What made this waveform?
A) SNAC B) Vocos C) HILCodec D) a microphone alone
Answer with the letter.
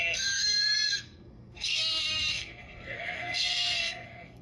A